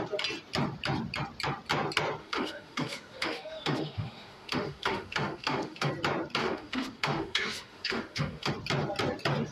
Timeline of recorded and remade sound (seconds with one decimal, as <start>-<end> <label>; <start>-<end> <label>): 0.0-2.2 recorded; 2.2-5.9 remade; 5.9-6.4 recorded; 6.4-8.5 remade; 8.5-9.5 recorded